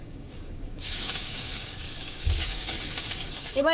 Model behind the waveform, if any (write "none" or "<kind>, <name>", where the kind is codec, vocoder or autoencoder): codec, DAC